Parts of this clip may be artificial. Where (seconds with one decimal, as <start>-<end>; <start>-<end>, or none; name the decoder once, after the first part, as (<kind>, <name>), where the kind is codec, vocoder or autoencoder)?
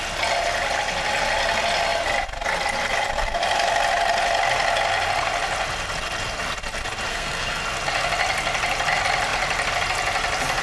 7.1-7.6 (codec, SNAC)